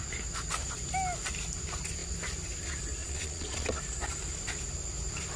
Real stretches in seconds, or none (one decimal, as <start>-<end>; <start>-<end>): 0.0-3.0; 3.8-5.4